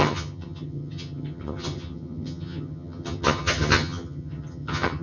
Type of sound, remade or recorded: remade